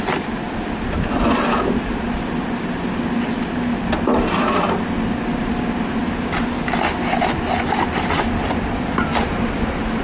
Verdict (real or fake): real